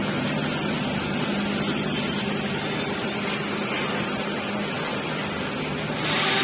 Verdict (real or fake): real